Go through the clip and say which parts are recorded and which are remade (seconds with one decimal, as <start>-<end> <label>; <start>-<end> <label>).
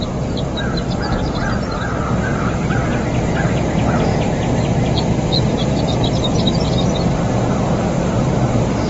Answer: 0.0-8.9 recorded